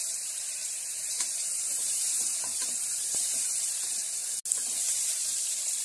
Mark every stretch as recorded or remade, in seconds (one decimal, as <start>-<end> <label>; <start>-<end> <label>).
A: 0.0-4.2 remade; 4.2-4.8 recorded; 4.8-5.8 remade